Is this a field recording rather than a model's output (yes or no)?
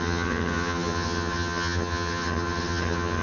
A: no